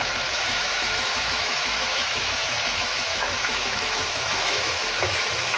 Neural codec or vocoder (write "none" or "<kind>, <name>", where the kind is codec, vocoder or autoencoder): autoencoder, DAC-VAE